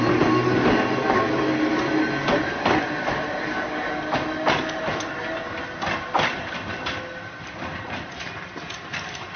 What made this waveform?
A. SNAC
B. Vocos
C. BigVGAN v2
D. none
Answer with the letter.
D